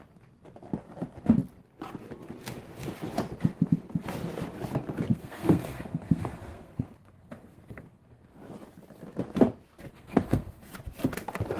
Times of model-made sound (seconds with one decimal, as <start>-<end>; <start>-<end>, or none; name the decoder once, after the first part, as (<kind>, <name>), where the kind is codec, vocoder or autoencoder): 5.1-8.4 (codec, SNAC); 9.9-10.6